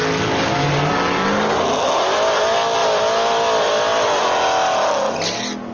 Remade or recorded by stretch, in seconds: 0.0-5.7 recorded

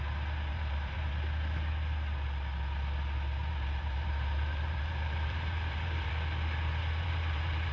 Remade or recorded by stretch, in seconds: 0.0-0.5 recorded; 0.5-1.1 remade; 1.1-3.4 recorded; 3.4-6.1 remade; 6.1-6.8 recorded; 6.8-7.7 remade

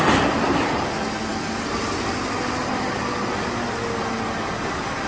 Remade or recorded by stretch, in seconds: 0.0-5.1 recorded

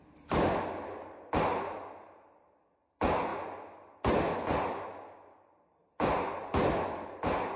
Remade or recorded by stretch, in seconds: 0.0-7.6 recorded

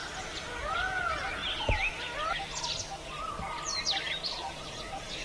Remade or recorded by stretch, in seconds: 0.0-0.5 recorded; 0.5-1.4 remade; 1.4-4.5 recorded; 4.5-5.2 remade

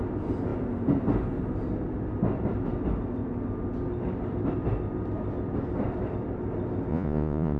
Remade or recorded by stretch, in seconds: 0.0-6.9 recorded; 6.9-7.6 remade

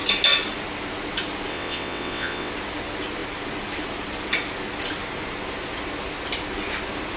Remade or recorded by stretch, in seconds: 0.0-1.5 recorded; 1.5-2.5 remade; 2.5-7.2 recorded